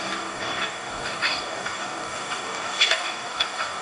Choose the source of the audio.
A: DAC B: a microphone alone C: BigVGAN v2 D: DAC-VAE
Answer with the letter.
A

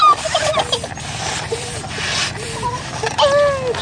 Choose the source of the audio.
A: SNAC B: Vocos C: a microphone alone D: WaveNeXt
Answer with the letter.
C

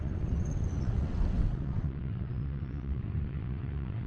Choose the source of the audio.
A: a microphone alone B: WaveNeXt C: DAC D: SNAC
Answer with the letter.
B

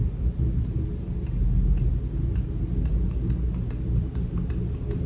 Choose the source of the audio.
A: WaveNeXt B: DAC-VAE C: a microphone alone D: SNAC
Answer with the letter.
C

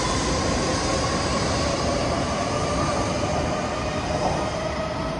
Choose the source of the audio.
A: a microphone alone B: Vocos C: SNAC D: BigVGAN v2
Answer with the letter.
A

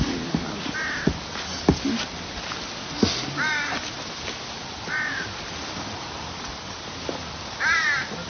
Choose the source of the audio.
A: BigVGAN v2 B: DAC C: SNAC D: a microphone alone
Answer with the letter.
D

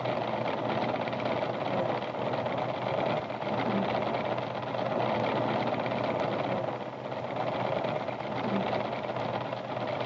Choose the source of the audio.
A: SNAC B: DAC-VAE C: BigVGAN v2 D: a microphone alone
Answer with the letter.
D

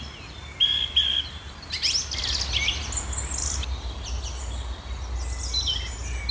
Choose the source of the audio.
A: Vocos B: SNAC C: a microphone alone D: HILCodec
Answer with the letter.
C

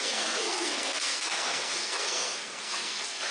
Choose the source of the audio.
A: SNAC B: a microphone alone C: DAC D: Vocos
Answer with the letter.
A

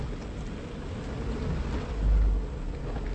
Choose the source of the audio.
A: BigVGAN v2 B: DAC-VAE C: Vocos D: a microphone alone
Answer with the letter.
D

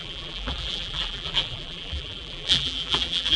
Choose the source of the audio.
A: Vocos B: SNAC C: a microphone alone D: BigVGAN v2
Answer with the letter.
D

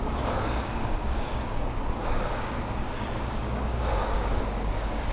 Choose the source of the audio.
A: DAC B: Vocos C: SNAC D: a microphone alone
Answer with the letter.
A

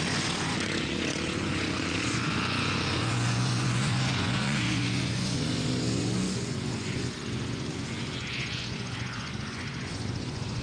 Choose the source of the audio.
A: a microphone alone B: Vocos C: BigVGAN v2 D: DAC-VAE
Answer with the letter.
B